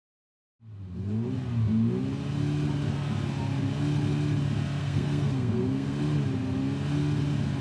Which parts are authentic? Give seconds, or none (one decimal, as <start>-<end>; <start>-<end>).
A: 0.0-4.8; 6.0-7.6